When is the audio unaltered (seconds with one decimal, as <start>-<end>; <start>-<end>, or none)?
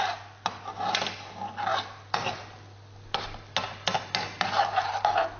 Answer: 0.0-5.4